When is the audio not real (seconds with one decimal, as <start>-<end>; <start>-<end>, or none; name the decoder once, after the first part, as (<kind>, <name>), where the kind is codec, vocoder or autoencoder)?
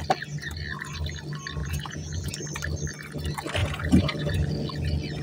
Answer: 1.6-2.3 (vocoder, Vocos); 3.6-4.5